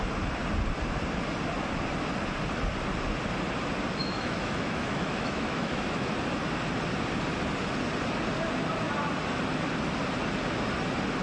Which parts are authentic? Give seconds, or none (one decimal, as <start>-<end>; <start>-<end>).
0.0-4.0; 6.1-11.2